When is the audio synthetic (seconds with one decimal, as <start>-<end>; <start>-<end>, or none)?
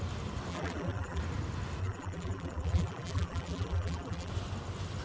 0.5-1.2; 1.8-4.3